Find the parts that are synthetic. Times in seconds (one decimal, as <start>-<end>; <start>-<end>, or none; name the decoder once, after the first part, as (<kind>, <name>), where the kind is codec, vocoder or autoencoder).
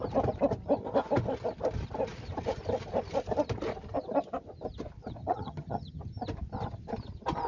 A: 5.2-6.0 (vocoder, HiFi-GAN)